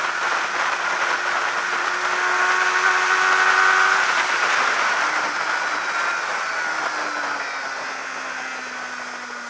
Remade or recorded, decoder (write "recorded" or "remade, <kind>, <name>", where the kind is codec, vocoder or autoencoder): recorded